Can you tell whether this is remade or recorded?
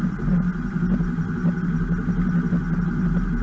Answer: recorded